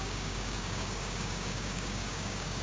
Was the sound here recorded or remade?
remade